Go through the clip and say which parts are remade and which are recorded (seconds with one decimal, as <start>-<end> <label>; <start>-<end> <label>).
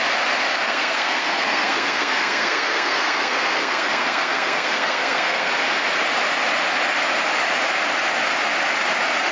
0.0-0.5 recorded; 0.5-5.5 remade; 5.5-9.3 recorded